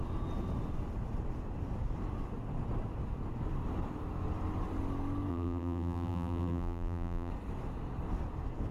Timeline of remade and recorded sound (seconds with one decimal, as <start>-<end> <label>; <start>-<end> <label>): 0.0-5.3 recorded; 5.3-7.3 remade; 7.3-8.7 recorded